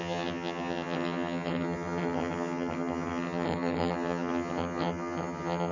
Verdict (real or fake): fake